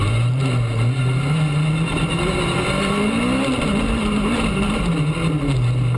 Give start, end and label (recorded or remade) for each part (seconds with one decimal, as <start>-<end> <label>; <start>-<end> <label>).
0.0-6.0 recorded